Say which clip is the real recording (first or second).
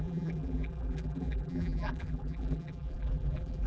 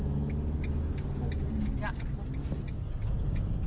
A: second